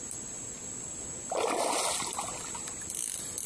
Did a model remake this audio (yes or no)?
no